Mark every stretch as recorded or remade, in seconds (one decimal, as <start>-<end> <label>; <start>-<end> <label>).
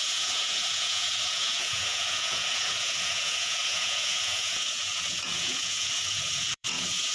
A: 0.0-7.1 remade